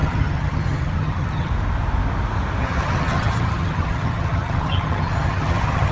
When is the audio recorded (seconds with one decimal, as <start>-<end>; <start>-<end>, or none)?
1.5-2.6